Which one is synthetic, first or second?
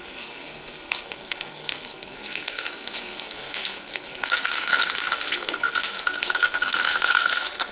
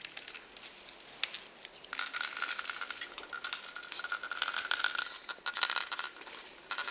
first